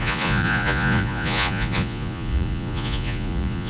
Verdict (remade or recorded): remade